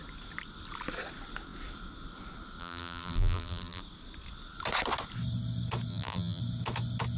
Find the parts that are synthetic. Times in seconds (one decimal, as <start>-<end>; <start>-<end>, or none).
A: 2.6-3.8; 5.9-6.4